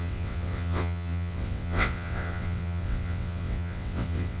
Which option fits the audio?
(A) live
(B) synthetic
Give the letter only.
B